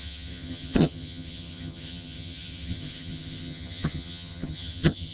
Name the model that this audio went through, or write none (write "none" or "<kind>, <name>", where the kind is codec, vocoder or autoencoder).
vocoder, HiFi-GAN